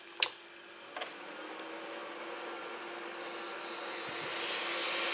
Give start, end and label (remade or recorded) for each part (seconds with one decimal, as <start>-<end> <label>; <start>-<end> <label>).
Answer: 0.0-5.1 recorded